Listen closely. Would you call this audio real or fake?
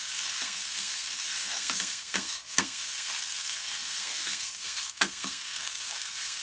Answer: fake